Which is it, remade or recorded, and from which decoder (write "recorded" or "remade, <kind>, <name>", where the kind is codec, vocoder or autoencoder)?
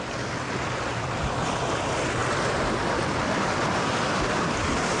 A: recorded